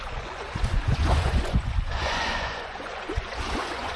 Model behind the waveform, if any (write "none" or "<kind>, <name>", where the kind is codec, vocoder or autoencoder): vocoder, Vocos